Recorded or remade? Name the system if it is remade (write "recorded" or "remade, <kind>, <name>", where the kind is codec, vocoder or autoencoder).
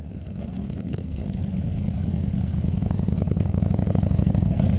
remade, codec, SNAC